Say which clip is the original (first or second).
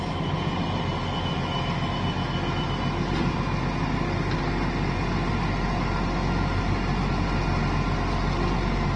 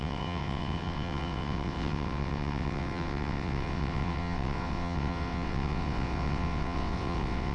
first